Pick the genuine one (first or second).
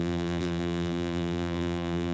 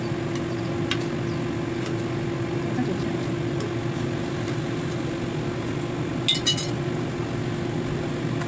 second